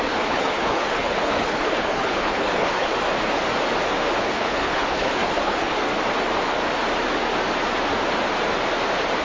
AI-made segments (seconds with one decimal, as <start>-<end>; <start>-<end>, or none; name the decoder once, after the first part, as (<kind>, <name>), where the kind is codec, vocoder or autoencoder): 0.0-2.9 (codec, HILCodec); 4.2-5.8